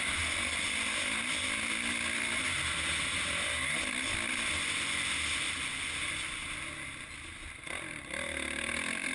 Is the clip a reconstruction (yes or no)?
no